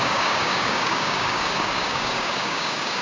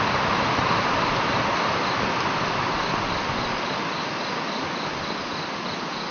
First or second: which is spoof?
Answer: first